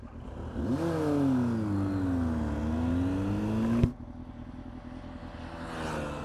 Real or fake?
real